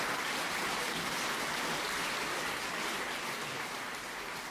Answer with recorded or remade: recorded